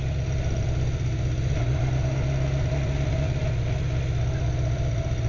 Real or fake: real